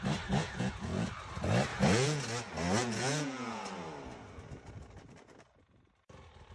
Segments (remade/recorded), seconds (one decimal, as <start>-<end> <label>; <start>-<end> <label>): 0.0-0.4 recorded; 0.4-1.1 remade; 1.1-1.7 recorded; 1.7-2.2 remade; 2.2-2.8 recorded; 2.8-3.6 remade; 3.6-6.5 recorded